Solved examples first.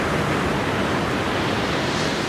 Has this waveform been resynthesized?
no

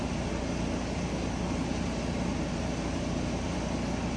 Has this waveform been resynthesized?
no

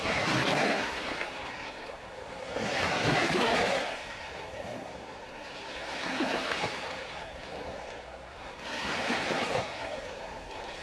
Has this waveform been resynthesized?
yes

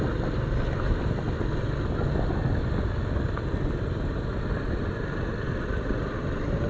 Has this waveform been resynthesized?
no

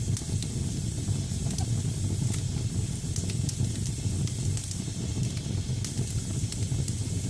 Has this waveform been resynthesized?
no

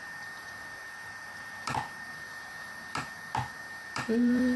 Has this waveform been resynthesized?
yes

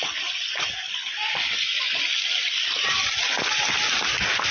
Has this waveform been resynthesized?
no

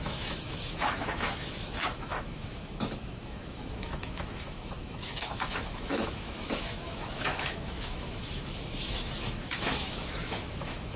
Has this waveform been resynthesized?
yes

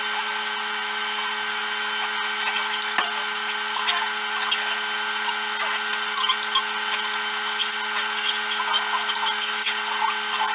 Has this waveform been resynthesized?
no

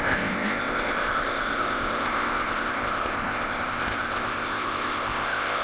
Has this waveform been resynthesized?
yes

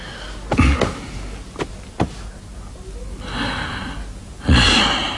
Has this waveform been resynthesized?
no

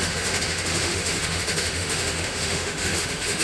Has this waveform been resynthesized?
yes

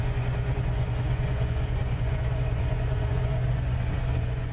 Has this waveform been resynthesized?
yes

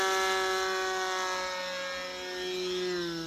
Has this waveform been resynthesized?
no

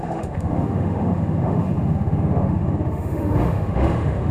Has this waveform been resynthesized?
yes